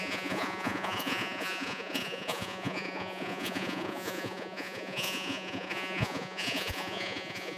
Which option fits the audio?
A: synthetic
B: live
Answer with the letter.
A